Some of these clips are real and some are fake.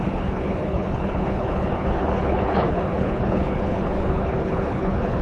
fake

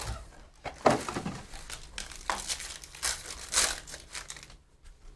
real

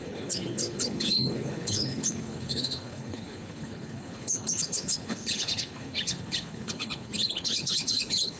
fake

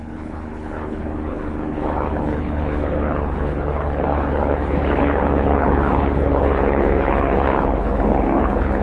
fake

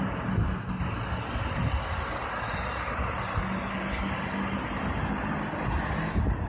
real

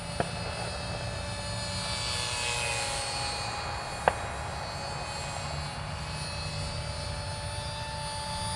real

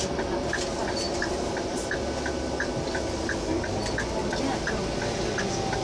real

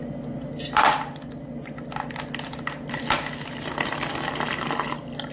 real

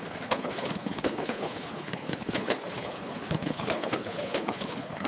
fake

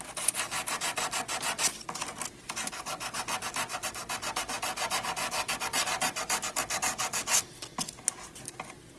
real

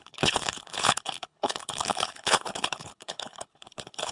fake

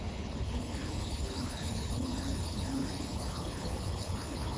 fake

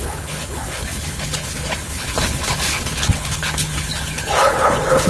fake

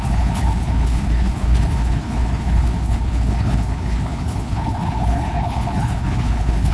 fake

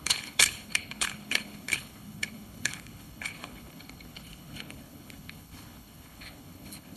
fake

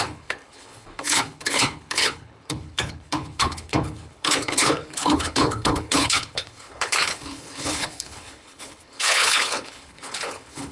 fake